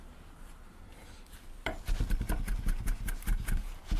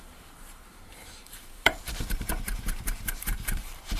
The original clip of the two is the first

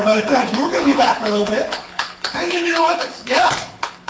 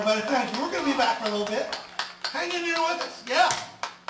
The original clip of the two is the second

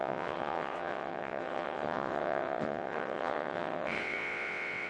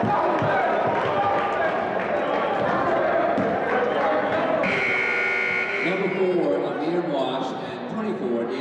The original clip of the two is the second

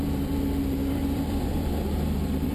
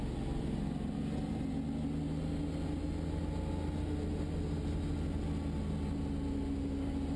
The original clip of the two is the second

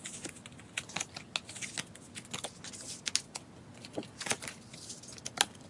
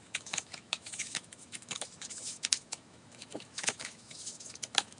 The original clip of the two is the first